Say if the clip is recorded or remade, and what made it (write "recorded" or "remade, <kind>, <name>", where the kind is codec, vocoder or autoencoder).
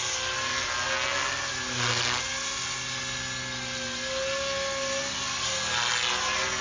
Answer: recorded